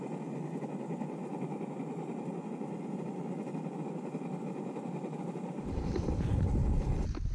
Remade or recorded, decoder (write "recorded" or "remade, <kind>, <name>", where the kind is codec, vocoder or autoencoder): recorded